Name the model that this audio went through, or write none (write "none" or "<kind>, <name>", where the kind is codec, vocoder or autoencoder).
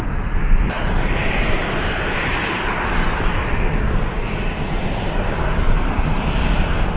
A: none